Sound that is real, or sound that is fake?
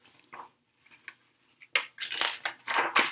real